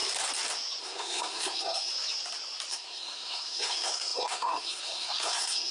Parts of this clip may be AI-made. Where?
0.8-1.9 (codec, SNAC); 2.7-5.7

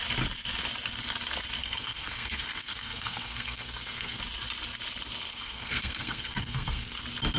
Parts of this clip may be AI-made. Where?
1.6-4.2 (codec, SNAC); 5.3-7.0

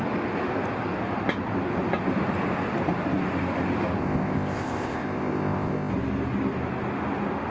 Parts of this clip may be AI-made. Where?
4.0-5.9 (codec, ZipCodec)

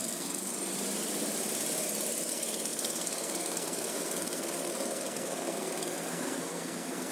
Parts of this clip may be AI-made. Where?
0.0-0.5 (codec, SNAC); 2.3-7.1

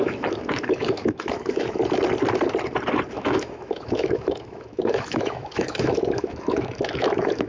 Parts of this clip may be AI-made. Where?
0.0-1.8 (autoencoder, DAC-VAE); 3.1-7.5

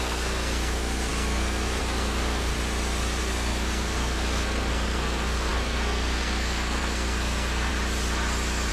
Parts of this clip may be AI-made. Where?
0.0-2.5 (codec, SNAC); 3.2-7.7

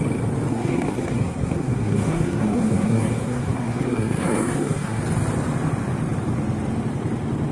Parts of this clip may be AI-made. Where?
0.5-5.0 (codec, SNAC)